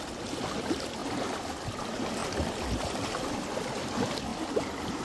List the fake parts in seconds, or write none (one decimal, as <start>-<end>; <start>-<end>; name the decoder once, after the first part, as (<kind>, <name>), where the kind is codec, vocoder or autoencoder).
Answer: none